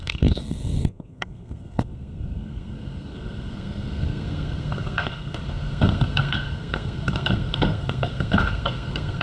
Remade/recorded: remade